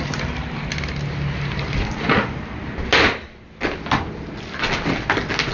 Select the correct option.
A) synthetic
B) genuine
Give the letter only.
B